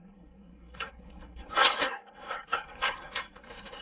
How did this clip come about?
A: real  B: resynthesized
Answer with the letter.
B